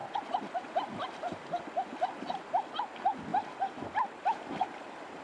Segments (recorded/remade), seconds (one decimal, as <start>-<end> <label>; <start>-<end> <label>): 0.0-2.5 remade; 2.5-3.3 recorded; 3.3-5.2 remade